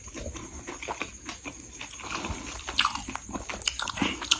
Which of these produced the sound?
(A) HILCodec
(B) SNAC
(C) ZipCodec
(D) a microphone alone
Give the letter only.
D